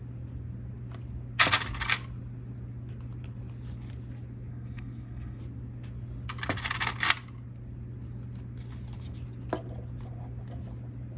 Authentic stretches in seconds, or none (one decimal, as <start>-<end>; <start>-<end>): 0.0-4.5; 5.4-11.2